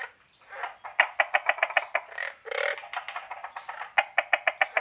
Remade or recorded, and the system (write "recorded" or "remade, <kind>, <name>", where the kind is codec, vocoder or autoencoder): recorded